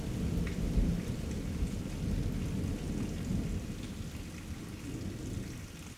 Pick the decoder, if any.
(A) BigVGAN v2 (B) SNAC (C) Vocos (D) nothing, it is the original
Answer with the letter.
D